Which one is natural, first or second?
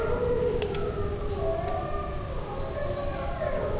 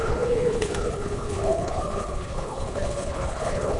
first